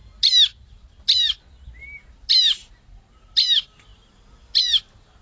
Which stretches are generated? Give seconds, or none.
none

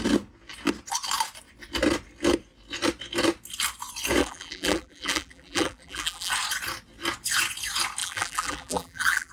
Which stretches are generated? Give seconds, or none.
4.2-6.3 (vocoder, BigVGAN v2); 8.0-9.3

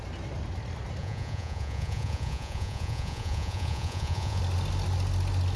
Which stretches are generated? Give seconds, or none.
1.0-4.4 (vocoder, Vocos)